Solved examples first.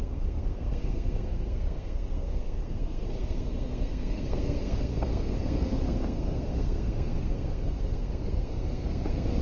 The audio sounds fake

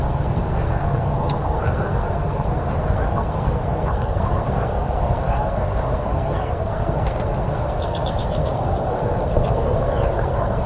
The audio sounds fake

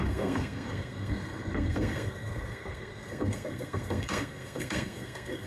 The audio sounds fake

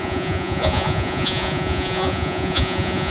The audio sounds fake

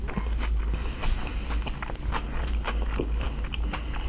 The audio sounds real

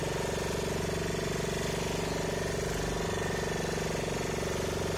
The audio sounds real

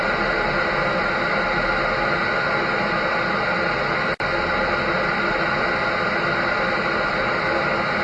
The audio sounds real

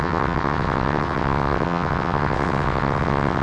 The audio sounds fake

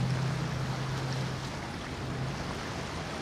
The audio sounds real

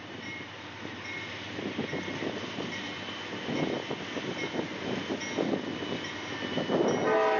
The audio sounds real